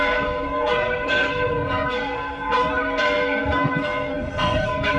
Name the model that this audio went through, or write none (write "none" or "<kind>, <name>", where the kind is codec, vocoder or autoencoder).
codec, SNAC